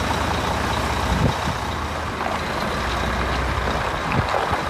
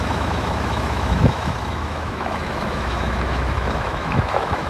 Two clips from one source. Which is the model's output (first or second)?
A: second